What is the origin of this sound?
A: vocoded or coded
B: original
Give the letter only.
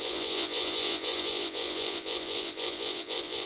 A